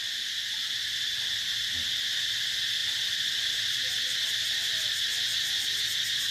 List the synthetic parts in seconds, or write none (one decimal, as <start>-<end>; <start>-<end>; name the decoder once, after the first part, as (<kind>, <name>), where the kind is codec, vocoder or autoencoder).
0.6-1.2 (vocoder, BigVGAN v2); 2.8-5.8